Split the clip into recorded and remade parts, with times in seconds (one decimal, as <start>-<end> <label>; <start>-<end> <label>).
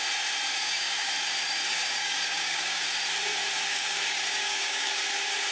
0.0-0.6 recorded; 0.6-1.1 remade; 1.1-1.7 recorded; 1.7-2.8 remade; 2.8-3.7 recorded; 3.7-5.0 remade; 5.0-5.5 recorded